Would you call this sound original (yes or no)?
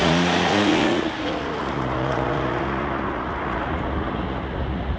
no